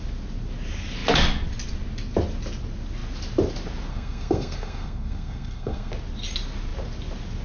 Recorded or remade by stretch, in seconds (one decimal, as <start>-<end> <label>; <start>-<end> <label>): 0.0-3.9 recorded; 3.9-5.9 remade; 5.9-7.4 recorded